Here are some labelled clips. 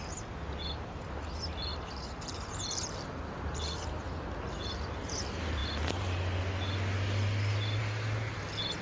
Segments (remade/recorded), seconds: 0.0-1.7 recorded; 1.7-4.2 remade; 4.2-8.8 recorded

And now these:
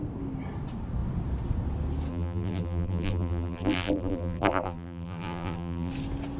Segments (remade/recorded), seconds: 0.0-2.1 recorded; 2.1-5.9 remade; 5.9-6.4 recorded

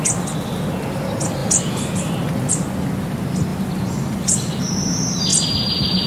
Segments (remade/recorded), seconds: 0.0-3.5 recorded; 3.5-4.6 remade; 4.6-6.1 recorded